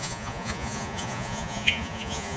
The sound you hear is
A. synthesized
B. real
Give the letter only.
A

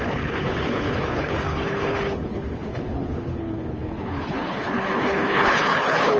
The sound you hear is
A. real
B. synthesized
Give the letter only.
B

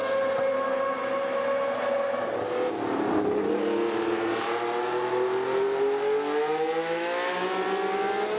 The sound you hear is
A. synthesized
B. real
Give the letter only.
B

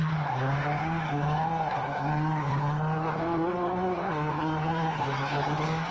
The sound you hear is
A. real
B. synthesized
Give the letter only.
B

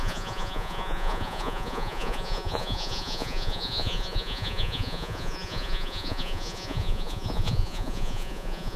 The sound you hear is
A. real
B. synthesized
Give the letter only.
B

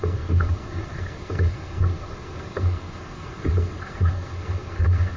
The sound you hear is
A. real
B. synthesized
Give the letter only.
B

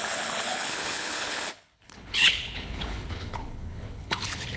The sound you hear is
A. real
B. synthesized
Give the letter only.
B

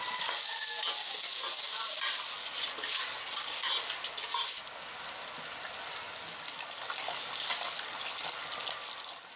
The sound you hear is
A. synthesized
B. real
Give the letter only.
B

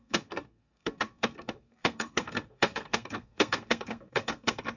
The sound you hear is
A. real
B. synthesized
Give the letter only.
B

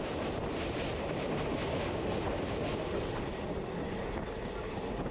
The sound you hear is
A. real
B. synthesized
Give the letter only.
A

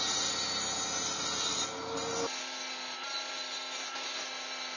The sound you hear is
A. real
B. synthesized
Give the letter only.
A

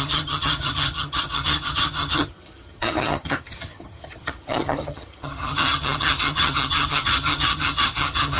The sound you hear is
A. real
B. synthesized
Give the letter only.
B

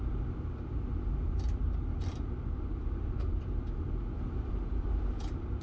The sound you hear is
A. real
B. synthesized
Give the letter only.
B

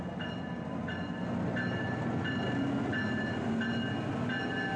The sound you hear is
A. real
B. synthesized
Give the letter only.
A